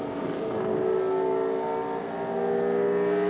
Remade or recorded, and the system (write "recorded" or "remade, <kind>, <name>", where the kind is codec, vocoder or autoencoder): recorded